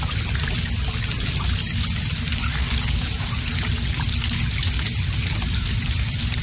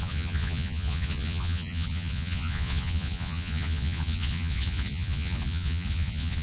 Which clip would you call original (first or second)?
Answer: first